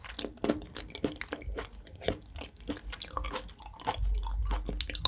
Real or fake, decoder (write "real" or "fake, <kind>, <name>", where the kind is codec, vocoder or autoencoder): real